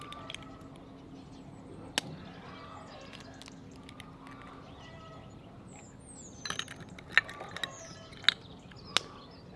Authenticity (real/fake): real